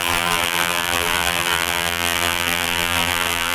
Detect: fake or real fake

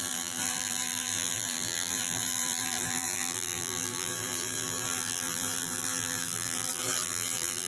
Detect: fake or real fake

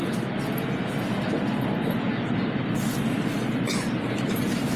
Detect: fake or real real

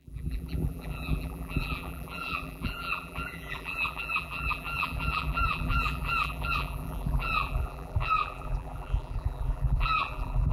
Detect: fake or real fake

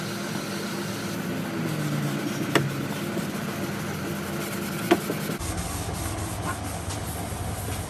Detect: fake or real real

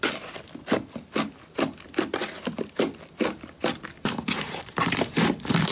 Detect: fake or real fake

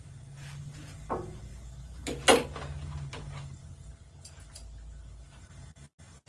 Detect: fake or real real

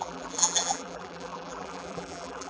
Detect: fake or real fake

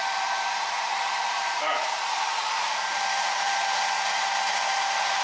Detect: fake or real fake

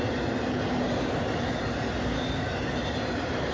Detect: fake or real real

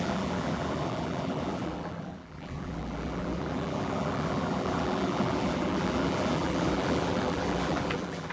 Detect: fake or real fake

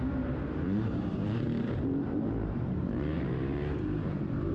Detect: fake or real fake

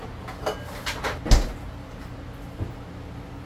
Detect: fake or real real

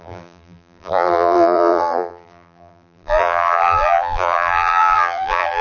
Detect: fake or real fake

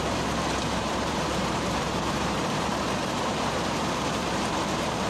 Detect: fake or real fake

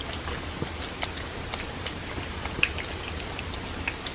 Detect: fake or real real